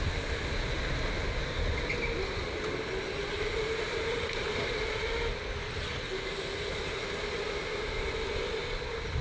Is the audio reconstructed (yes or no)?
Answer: no